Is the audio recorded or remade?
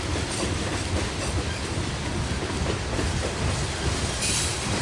recorded